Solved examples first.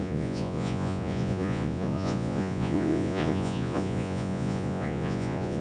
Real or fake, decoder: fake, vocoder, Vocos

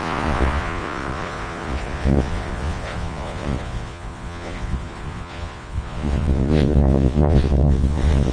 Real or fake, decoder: fake, vocoder, Vocos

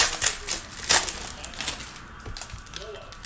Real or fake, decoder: real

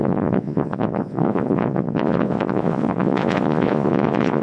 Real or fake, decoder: fake, vocoder, Vocos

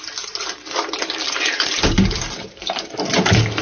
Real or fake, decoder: real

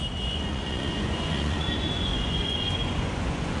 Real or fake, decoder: fake, vocoder, Vocos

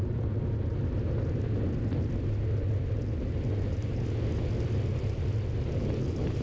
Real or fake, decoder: real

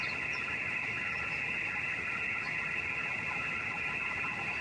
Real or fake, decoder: real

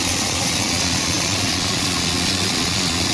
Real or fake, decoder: fake, vocoder, Vocos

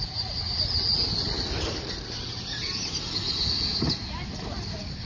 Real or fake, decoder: real